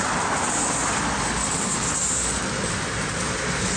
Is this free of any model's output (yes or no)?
yes